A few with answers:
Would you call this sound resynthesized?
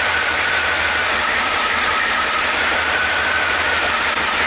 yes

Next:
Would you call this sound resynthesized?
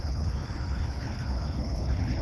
yes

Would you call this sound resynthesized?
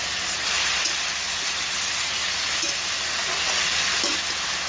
no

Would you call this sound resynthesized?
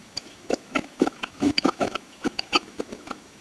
yes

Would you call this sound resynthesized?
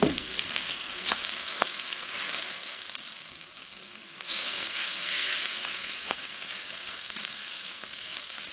yes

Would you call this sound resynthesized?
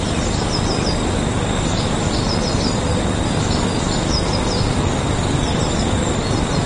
no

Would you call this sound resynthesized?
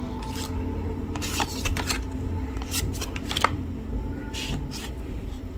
no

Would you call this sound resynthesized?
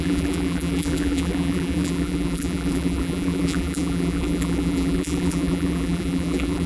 yes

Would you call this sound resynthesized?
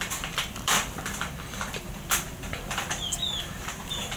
yes